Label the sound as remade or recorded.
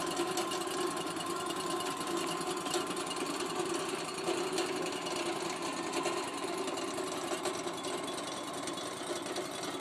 recorded